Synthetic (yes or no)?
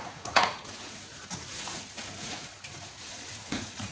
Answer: yes